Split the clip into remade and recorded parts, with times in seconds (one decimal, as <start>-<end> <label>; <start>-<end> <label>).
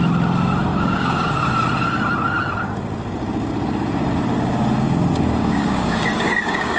0.0-0.7 recorded; 0.7-1.3 remade; 1.3-5.4 recorded; 5.4-6.8 remade